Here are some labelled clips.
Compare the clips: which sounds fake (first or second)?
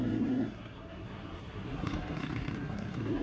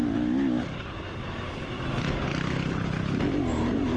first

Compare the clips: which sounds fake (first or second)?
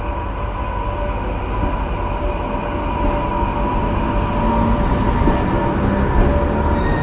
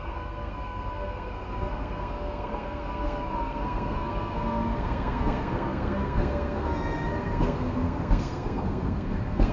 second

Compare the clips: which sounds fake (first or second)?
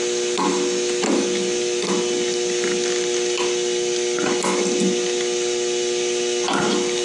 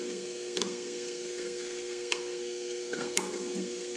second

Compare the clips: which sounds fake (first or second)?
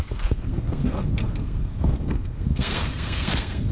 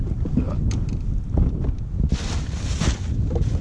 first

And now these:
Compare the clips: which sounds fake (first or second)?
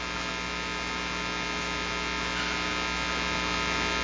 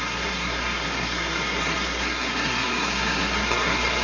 second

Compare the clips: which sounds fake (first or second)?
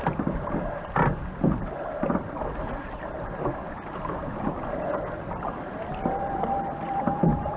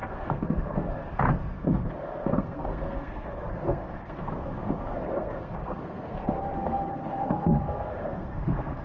second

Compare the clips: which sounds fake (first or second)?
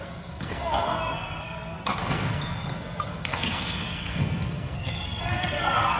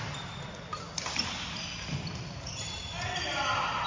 first